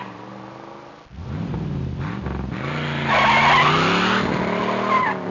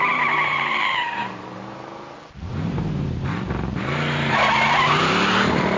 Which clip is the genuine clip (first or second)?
first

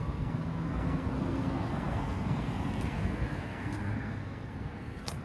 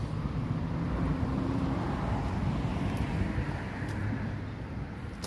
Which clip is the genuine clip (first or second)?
second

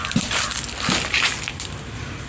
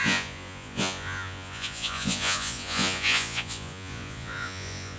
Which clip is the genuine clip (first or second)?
first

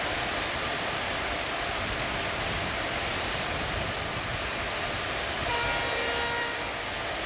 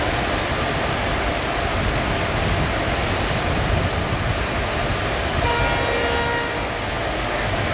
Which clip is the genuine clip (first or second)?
second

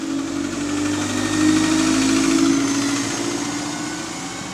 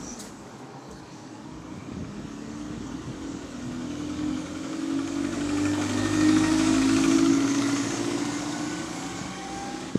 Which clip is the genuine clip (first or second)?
first